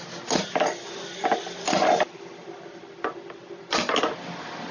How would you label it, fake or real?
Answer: real